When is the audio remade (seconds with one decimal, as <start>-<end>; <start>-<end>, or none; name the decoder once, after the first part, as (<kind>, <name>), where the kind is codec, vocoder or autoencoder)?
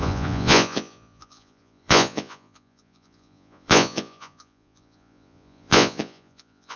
0.0-6.8 (vocoder, Vocos)